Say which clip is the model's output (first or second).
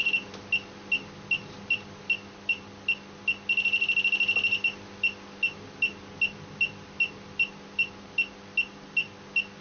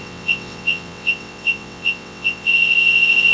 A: second